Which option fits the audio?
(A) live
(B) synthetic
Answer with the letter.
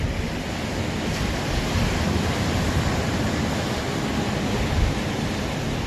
A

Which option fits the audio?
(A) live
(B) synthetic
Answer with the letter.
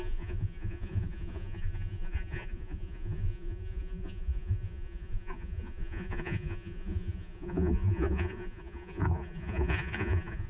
B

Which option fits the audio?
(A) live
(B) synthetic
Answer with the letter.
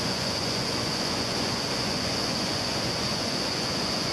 B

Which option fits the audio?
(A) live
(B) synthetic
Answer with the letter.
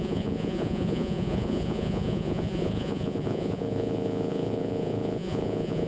B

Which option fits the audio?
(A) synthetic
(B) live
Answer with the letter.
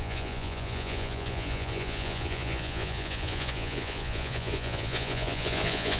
A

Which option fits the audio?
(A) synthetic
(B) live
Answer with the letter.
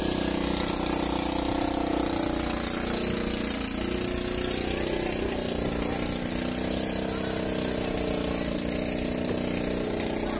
B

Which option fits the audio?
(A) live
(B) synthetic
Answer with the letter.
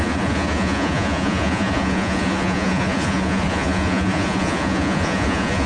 B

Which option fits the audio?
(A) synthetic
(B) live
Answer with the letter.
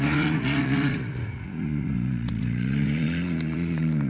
A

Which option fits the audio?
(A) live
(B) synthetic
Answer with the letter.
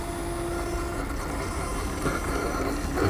A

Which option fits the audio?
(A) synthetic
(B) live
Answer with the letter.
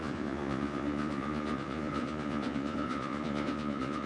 A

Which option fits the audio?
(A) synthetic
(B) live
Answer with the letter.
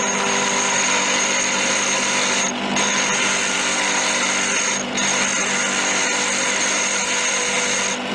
B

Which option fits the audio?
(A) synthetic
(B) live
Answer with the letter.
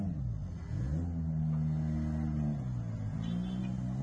B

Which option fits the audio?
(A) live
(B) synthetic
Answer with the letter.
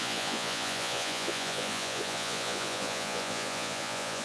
B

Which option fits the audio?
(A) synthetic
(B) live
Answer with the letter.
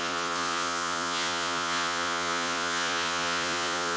A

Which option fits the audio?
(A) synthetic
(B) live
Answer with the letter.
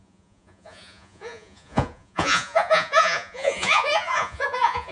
A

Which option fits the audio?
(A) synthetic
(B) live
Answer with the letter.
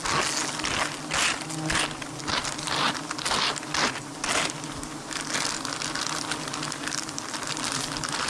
B